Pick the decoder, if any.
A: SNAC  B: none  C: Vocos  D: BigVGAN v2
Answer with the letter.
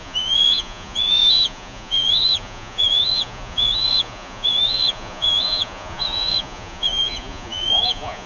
C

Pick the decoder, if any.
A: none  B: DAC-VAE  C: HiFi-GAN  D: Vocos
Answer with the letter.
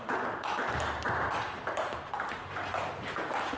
A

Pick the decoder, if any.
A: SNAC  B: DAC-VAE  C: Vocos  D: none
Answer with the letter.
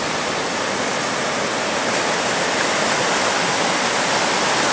D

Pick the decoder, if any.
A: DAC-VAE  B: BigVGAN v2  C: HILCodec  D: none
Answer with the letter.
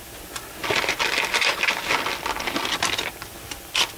D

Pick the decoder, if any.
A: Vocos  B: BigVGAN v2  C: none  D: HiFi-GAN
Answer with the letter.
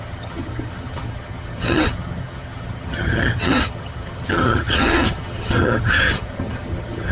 D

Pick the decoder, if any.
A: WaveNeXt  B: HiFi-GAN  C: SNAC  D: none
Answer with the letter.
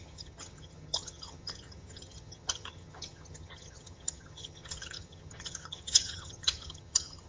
B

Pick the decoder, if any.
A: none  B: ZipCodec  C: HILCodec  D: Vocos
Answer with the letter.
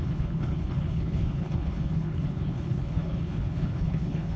C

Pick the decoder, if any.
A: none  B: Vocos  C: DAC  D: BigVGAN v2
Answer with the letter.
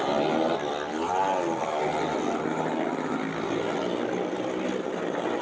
A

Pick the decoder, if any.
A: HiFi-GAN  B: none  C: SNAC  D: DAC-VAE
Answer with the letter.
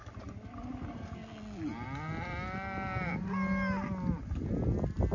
B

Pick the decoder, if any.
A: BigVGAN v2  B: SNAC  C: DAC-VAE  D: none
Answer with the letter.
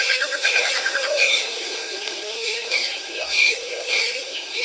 B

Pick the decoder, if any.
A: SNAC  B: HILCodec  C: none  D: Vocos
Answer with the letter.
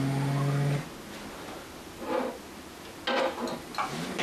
C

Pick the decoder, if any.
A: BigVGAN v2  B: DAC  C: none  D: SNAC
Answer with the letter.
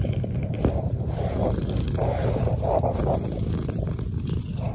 A